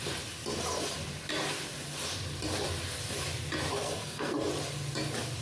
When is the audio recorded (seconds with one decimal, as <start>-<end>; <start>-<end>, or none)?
0.0-3.7; 4.4-5.4